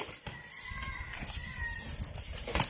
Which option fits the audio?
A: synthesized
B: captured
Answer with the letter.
B